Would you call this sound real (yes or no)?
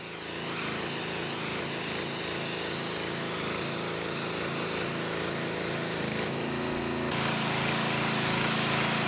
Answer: yes